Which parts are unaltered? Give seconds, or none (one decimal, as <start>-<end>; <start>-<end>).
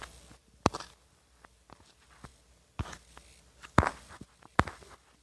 0.0-5.2